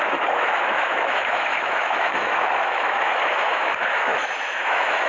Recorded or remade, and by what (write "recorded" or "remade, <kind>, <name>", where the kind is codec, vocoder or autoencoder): remade, autoencoder, DAC-VAE